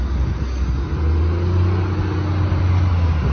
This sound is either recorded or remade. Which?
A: recorded